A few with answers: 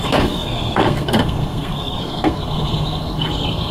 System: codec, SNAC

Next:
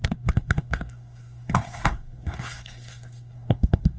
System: codec, SNAC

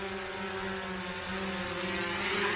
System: none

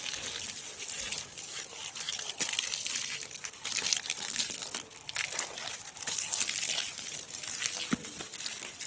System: none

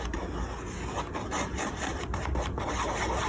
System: none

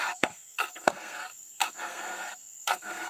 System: codec, SNAC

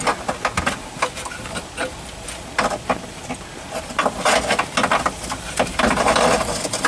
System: none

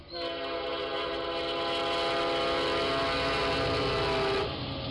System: none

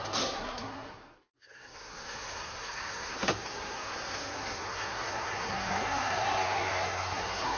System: codec, SNAC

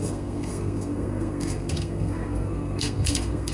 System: codec, SNAC